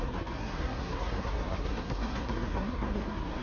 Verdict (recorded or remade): remade